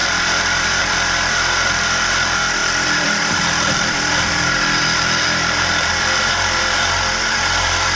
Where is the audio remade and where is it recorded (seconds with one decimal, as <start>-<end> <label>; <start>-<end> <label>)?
0.0-8.0 remade